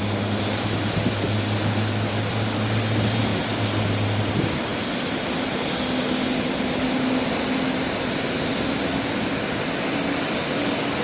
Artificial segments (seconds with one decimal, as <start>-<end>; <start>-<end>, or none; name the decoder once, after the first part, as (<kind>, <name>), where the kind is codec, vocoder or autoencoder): none